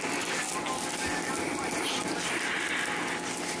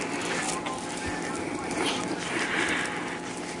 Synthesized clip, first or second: second